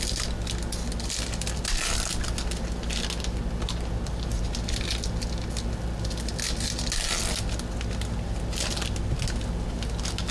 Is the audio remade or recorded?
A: recorded